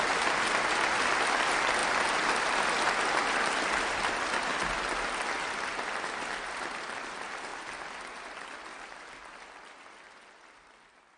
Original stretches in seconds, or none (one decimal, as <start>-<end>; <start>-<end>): 0.0-11.2